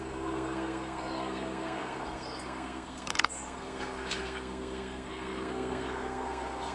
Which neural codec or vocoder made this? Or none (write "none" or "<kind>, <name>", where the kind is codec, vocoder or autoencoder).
codec, SNAC